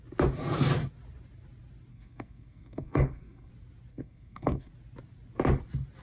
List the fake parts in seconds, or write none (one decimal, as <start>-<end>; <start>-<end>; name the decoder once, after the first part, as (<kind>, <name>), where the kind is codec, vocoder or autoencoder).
1.9-3.5 (codec, SNAC); 3.9-4.7